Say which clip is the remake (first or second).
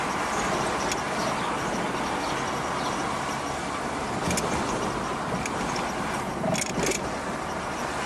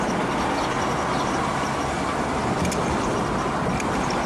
second